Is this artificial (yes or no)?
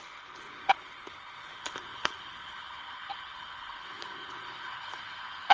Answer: yes